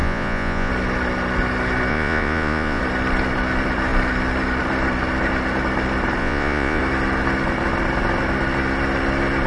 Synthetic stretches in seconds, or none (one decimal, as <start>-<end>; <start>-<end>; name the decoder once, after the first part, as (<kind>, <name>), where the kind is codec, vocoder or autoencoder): 0.0-0.7 (vocoder, Vocos); 1.9-2.8; 6.2-6.8